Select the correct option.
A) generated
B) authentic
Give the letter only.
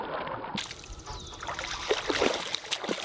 B